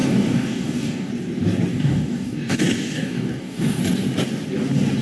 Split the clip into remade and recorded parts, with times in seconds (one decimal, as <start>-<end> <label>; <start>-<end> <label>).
0.0-1.1 remade; 1.1-1.7 recorded; 1.7-3.8 remade; 3.8-5.0 recorded